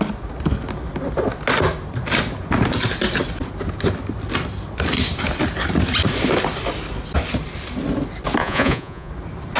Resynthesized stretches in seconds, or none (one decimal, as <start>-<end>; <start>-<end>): 8.4-9.1